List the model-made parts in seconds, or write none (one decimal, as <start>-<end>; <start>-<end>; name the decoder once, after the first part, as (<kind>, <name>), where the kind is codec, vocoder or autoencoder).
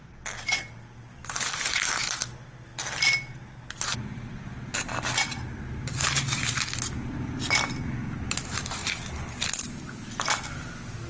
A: none